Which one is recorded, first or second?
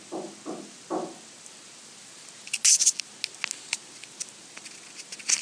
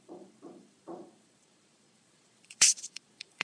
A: first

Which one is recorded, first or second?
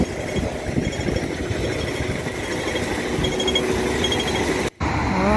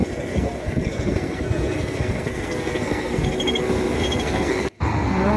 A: first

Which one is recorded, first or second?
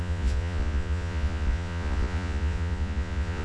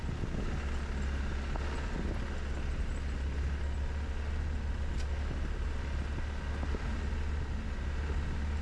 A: second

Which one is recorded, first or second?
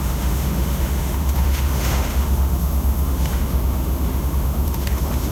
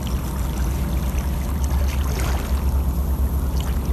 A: second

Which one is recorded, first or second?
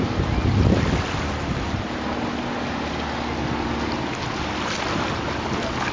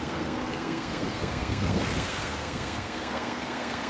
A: first